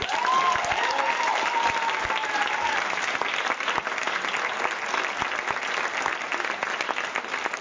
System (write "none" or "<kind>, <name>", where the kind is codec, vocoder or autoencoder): none